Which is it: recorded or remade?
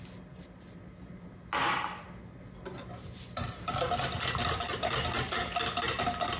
recorded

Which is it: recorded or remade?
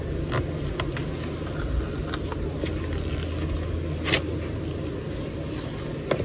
recorded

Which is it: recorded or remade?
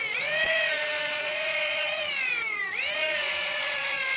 remade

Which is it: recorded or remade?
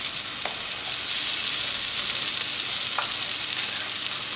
recorded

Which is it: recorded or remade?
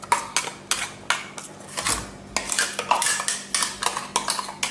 recorded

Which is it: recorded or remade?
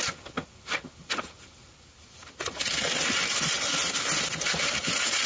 recorded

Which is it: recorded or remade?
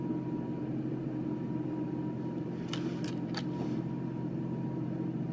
recorded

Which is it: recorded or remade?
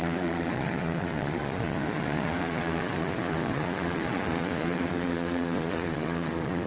remade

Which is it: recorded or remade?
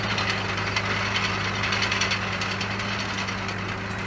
recorded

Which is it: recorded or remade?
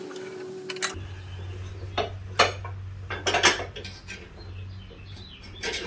recorded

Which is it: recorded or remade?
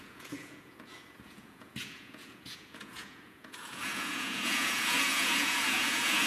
remade